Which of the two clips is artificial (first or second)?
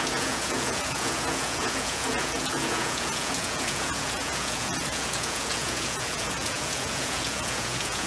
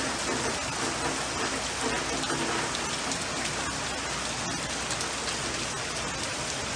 first